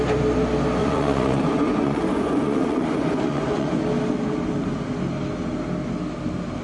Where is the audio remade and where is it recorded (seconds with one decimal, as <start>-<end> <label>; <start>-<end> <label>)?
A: 0.0-0.8 recorded; 0.8-3.8 remade; 3.8-6.6 recorded